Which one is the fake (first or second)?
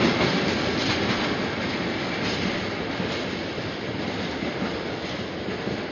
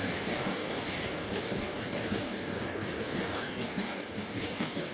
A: second